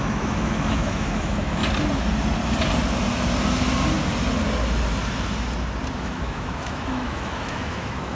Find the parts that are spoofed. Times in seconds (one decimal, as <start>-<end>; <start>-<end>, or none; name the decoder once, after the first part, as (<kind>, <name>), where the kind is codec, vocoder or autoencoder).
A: 0.0-1.6 (autoencoder, DAC-VAE); 5.9-8.1